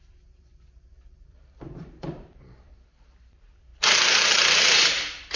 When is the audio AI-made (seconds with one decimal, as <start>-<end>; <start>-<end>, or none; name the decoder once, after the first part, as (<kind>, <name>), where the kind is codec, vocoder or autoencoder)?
0.0-3.7 (vocoder, BigVGAN v2); 4.7-5.4